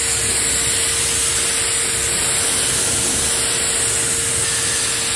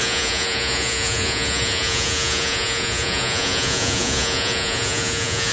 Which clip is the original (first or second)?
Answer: first